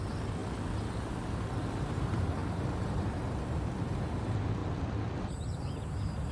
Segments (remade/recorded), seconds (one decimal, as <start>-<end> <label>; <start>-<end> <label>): 0.0-0.4 remade; 0.4-1.8 recorded; 1.8-4.6 remade; 4.6-5.2 recorded; 5.2-6.3 remade